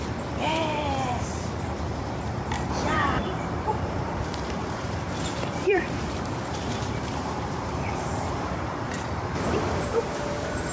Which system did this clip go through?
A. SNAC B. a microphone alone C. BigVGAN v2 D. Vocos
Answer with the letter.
C